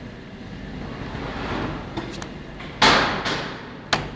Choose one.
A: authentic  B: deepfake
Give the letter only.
A